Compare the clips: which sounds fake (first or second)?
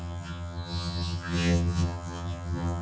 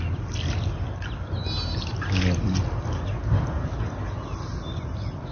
first